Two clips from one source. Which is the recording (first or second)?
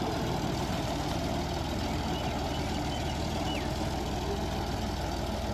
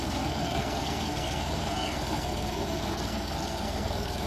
first